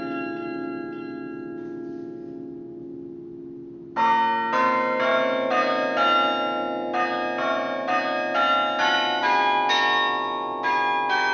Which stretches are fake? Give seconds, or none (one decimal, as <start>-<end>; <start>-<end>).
none